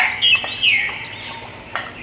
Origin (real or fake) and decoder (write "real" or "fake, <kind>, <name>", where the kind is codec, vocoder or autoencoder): real